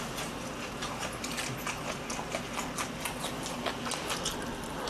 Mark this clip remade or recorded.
recorded